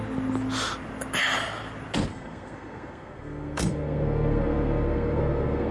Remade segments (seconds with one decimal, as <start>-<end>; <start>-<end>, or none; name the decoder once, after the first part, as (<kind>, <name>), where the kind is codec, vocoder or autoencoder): 2.1-5.7 (codec, SNAC)